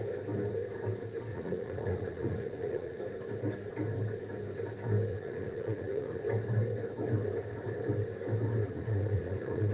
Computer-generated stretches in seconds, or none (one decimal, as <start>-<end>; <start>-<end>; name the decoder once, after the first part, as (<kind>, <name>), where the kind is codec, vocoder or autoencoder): 1.3-3.0 (vocoder, Vocos); 5.1-6.2; 8.6-9.7